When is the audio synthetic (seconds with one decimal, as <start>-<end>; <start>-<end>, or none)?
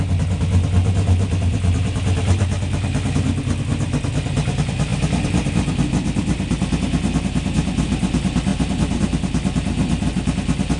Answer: none